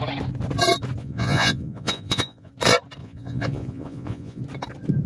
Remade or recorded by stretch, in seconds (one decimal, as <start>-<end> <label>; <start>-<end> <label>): 0.0-1.0 recorded; 1.0-2.5 remade; 2.5-3.0 recorded; 3.0-4.4 remade; 4.4-5.1 recorded